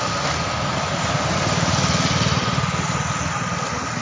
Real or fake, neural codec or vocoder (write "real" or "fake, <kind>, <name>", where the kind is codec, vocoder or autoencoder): real